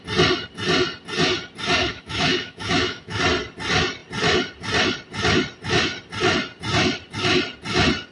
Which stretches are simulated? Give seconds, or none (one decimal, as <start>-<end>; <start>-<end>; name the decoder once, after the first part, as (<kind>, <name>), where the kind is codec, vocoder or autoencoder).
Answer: 1.8-3.2 (autoencoder, DAC-VAE)